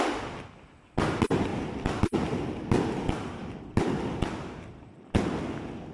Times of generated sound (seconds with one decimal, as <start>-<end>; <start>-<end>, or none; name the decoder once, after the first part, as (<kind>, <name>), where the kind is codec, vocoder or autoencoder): none